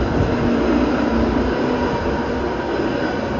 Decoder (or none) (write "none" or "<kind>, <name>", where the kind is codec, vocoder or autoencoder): none